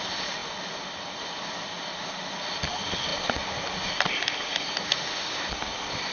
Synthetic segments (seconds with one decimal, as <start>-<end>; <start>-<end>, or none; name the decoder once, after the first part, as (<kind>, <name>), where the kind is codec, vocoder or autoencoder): none